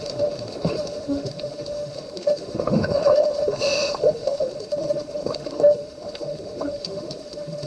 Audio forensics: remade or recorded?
remade